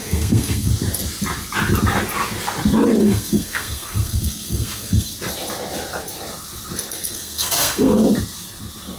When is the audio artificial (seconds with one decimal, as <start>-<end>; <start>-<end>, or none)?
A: 0.0-0.7; 3.0-5.1; 6.9-8.0